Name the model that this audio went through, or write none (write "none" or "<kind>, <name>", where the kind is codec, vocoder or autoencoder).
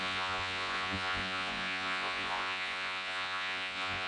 vocoder, Vocos